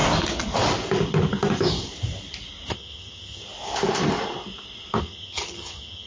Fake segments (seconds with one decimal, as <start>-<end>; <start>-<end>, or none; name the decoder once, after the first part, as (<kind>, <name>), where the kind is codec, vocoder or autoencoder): 2.7-3.4 (vocoder, HiFi-GAN); 5.0-6.1